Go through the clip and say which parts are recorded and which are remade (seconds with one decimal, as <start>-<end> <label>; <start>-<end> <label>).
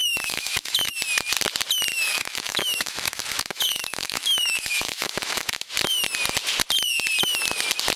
0.0-0.9 remade; 0.9-1.9 recorded; 1.9-5.7 remade; 5.7-8.0 recorded